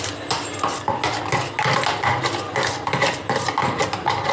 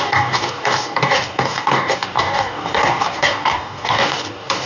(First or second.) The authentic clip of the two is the first